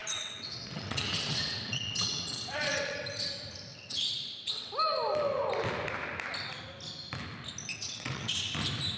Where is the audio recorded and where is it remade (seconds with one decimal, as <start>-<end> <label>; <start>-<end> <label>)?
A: 0.0-3.0 remade; 3.0-3.7 recorded; 3.7-4.7 remade; 4.7-7.7 recorded; 7.7-8.5 remade; 8.5-9.0 recorded